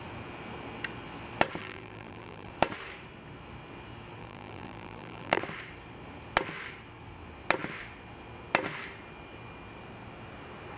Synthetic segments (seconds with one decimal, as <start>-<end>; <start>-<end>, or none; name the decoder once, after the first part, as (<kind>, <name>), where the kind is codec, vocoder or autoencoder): 1.6-2.5 (vocoder, BigVGAN v2); 4.2-5.4